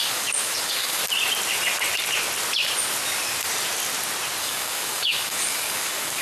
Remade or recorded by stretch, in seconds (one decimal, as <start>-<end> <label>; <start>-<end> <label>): 0.0-1.0 remade; 1.0-4.4 recorded; 4.4-6.2 remade